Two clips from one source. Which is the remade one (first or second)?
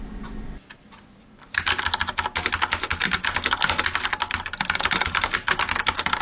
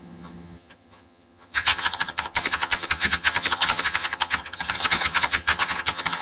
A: second